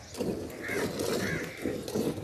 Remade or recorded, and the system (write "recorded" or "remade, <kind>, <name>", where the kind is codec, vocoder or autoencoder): recorded